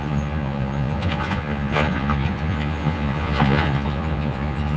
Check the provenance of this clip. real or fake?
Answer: fake